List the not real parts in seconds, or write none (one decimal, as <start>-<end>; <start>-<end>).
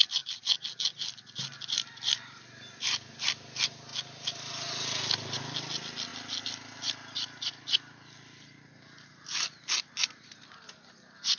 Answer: none